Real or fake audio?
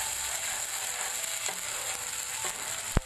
real